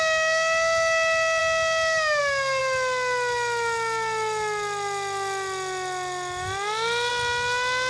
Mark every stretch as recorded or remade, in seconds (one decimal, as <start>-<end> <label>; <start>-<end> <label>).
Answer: 0.0-7.9 recorded